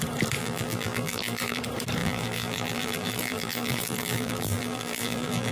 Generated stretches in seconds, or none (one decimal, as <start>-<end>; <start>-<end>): 0.4-1.6; 2.0-5.5

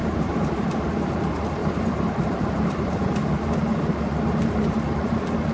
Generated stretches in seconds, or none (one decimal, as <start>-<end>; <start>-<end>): 0.0-0.8; 1.6-3.2

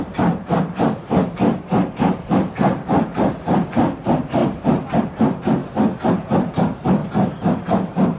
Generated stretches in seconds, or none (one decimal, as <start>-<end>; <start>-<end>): 0.0-5.6; 6.1-8.2

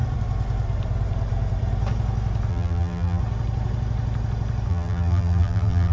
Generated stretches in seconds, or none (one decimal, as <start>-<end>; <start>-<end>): 2.5-3.2; 4.7-5.9

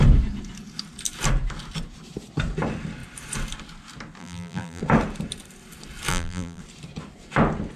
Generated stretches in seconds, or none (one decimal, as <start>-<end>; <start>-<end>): 4.2-4.8; 6.1-6.6

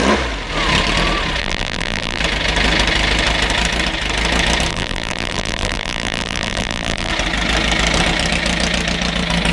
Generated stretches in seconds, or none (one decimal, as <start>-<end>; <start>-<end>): 1.4-2.2; 4.7-7.1